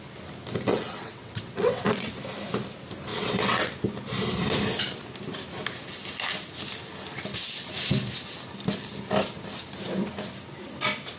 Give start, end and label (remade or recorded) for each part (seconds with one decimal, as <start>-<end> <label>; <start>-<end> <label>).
0.0-0.7 recorded; 0.7-2.1 remade; 2.1-3.1 recorded; 3.1-3.7 remade; 3.7-11.2 recorded